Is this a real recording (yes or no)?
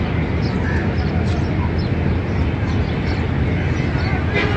yes